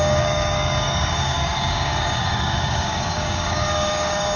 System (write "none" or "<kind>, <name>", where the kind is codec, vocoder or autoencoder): codec, DAC